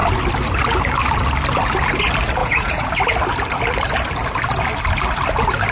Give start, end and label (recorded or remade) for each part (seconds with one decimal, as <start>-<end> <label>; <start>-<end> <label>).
0.0-2.4 recorded; 2.4-2.9 remade; 2.9-5.7 recorded